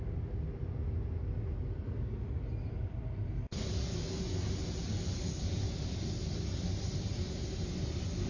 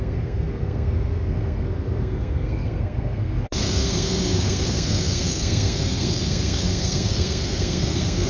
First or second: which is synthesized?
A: second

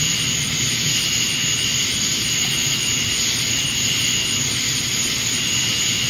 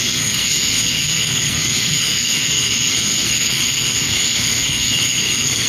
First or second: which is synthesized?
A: second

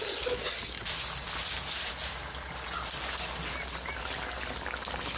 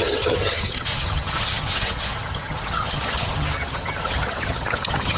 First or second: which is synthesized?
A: second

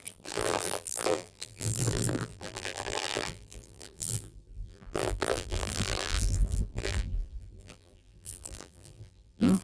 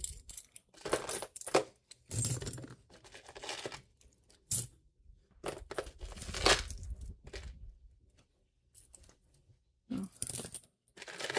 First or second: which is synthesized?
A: first